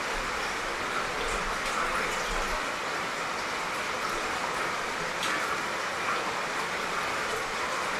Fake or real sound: real